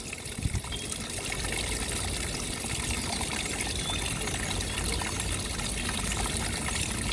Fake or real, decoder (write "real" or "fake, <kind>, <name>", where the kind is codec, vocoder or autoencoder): real